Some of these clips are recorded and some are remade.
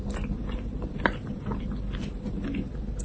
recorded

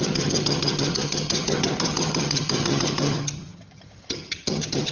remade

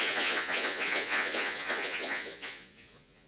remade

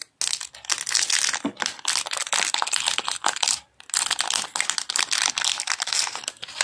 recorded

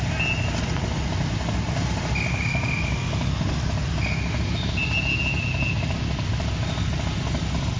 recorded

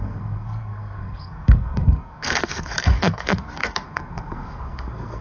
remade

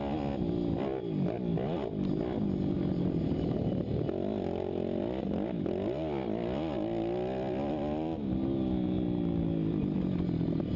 recorded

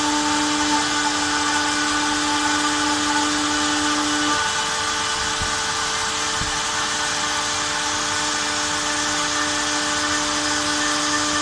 recorded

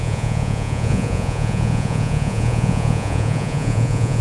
remade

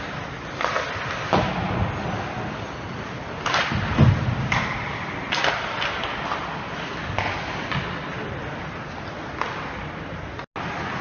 recorded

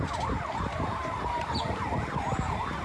recorded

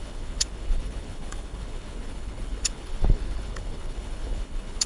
remade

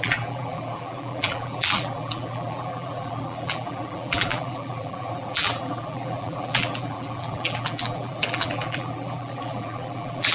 remade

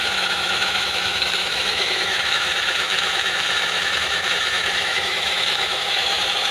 remade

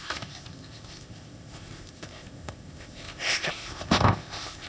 remade